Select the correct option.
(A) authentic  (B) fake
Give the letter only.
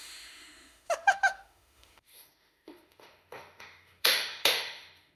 B